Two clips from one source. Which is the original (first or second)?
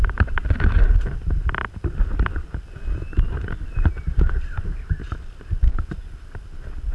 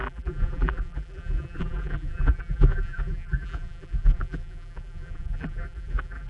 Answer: first